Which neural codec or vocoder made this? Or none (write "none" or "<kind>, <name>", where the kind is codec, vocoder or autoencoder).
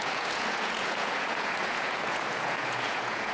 vocoder, Vocos